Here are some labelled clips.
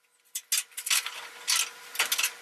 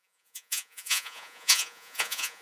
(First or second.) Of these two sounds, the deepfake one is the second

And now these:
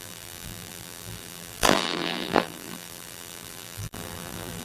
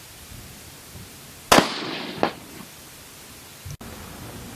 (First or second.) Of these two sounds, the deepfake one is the first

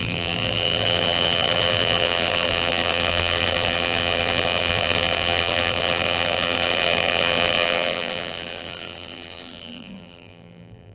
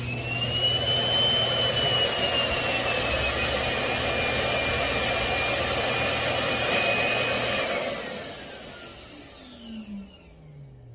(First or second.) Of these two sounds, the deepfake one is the first